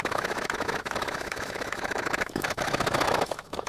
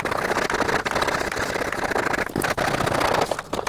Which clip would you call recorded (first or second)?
second